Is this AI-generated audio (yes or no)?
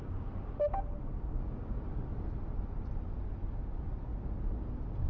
no